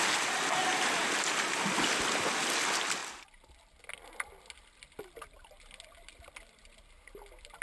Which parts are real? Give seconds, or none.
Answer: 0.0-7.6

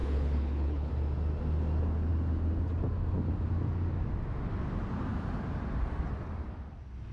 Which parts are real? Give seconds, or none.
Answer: 0.9-7.1

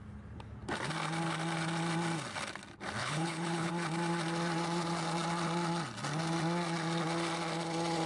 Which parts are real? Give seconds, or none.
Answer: 0.0-3.0; 3.7-8.1